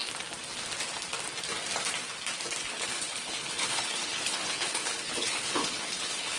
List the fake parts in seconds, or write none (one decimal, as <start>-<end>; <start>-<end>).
2.6-6.4